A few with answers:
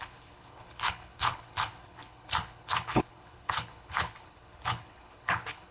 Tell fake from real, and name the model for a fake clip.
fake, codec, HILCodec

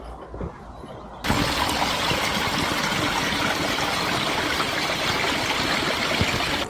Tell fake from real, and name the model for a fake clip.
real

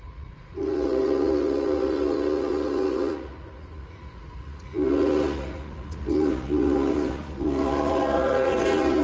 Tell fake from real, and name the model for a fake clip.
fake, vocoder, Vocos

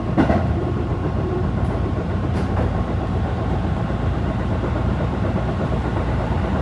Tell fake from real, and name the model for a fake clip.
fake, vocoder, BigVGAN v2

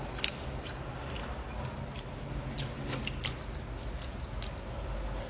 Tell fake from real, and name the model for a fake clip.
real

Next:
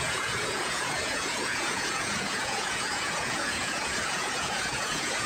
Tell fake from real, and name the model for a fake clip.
fake, vocoder, Vocos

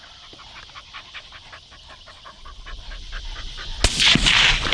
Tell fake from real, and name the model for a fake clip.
real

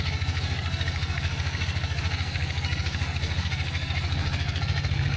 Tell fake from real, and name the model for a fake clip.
fake, codec, SNAC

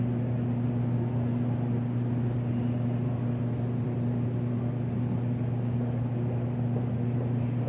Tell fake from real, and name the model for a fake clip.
fake, vocoder, BigVGAN v2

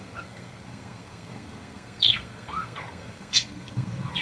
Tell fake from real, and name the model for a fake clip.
fake, codec, SNAC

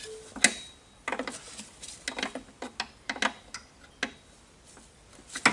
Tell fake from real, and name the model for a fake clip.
real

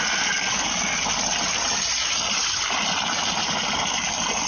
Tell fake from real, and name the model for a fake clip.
real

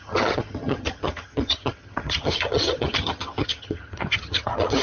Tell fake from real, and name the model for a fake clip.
fake, vocoder, HiFi-GAN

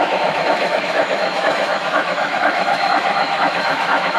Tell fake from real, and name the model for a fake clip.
fake, autoencoder, DAC-VAE